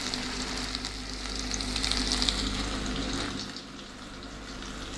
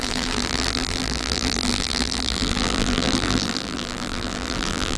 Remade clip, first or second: second